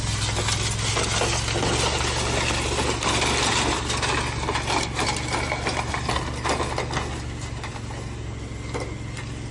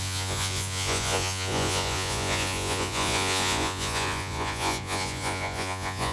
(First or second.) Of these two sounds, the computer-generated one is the second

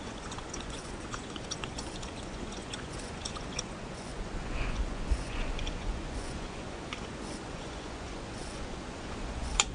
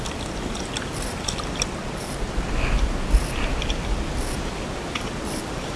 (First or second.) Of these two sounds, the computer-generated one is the first